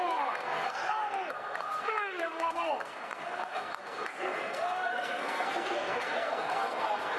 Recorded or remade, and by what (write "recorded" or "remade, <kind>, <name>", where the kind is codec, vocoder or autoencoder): remade, codec, SNAC